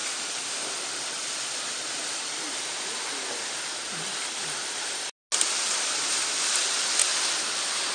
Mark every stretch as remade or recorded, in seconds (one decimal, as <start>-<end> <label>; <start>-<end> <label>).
0.0-7.9 recorded